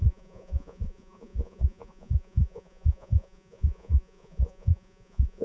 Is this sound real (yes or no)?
no